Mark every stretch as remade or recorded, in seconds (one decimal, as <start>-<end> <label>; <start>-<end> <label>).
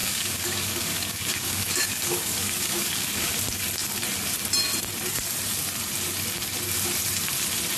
0.0-3.3 remade; 3.3-7.8 recorded